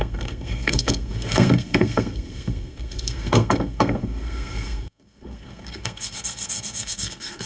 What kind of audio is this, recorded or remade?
remade